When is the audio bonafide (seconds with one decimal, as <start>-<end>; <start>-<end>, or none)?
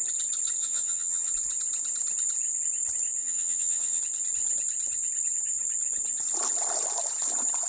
0.0-0.6; 1.3-3.2; 4.0-7.7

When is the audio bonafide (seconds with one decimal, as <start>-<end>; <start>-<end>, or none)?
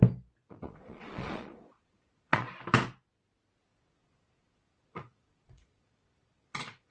0.0-0.4; 2.5-3.7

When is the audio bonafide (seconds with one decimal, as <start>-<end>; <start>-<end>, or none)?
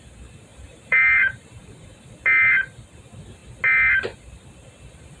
0.0-0.5; 2.1-5.2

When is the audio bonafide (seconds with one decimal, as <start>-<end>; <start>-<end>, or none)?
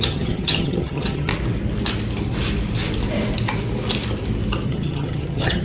1.3-4.7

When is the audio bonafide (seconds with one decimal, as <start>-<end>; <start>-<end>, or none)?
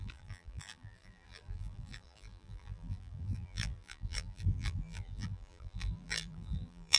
none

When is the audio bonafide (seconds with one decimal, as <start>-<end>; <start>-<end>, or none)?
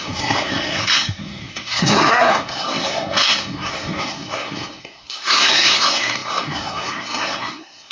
none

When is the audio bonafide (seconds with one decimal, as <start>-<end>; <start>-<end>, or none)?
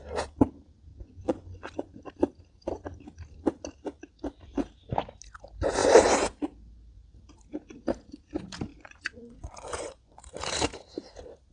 0.0-0.9; 2.0-8.7; 10.2-11.5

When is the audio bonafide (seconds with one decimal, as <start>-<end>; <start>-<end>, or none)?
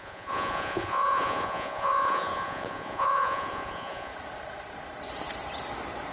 4.1-6.1